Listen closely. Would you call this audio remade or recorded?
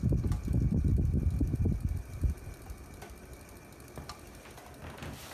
recorded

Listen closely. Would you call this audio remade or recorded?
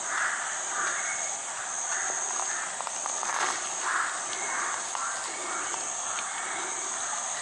remade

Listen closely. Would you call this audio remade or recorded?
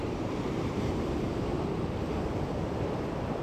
remade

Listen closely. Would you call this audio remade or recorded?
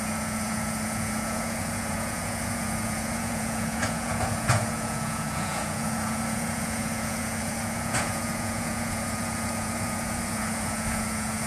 remade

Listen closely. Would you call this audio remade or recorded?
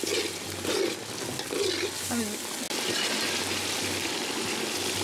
recorded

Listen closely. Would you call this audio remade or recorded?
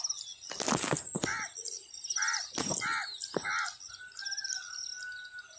recorded